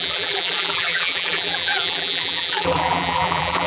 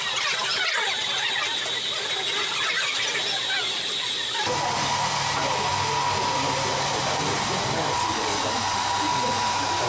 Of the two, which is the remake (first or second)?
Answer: first